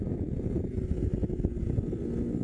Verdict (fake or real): real